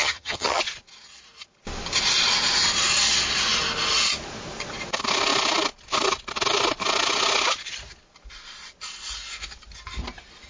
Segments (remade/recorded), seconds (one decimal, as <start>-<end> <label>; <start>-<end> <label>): 0.0-0.6 remade; 0.6-10.5 recorded